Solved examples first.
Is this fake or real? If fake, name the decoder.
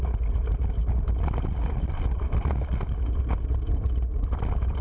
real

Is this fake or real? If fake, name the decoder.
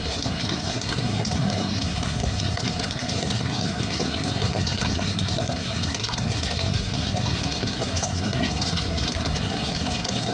fake, codec, SNAC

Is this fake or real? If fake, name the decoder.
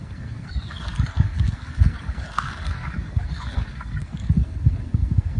fake, codec, SNAC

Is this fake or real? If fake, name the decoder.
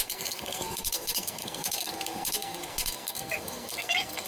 fake, codec, SNAC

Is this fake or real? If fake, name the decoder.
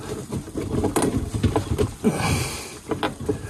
real